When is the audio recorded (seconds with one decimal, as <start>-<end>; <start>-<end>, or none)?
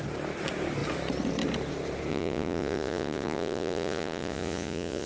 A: 0.0-2.1